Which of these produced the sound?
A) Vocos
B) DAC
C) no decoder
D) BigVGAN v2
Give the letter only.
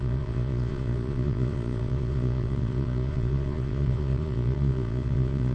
A